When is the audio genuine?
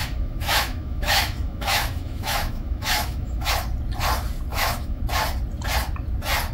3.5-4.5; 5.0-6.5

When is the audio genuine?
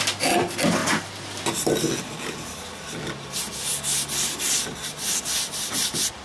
0.0-6.2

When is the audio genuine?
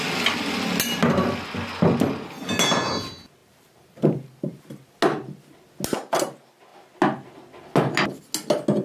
0.0-3.4; 4.6-8.8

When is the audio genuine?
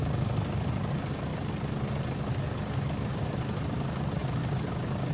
0.0-0.9; 1.3-3.1; 4.2-5.1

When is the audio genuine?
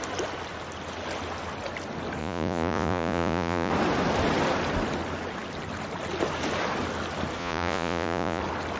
0.0-2.2; 3.7-7.4; 8.4-8.8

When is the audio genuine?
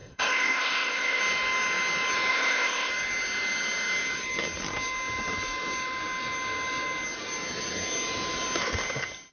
1.2-2.3; 2.9-9.3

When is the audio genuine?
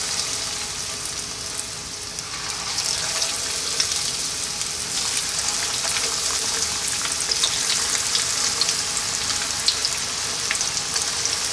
0.0-11.5